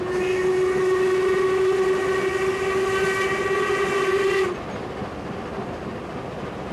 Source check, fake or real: real